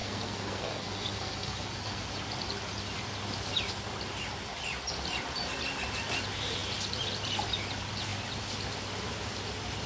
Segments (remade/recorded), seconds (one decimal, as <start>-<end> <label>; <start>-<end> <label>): 0.0-2.0 remade; 2.0-9.9 recorded